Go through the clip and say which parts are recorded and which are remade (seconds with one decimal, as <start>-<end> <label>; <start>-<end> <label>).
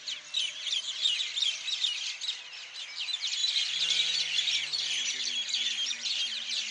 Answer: 0.0-3.4 recorded; 3.4-5.2 remade; 5.2-6.7 recorded